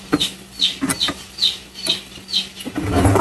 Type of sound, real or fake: real